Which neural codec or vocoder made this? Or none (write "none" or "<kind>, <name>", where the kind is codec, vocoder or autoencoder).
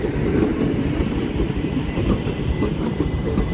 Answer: none